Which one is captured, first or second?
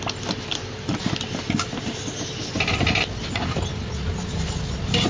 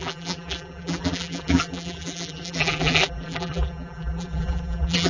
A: first